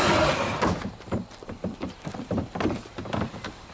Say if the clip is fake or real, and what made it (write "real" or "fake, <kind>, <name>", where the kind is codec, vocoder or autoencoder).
real